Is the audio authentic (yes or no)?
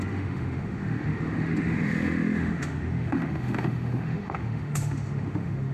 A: no